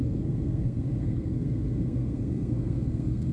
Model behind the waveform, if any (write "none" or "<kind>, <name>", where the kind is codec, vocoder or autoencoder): codec, SNAC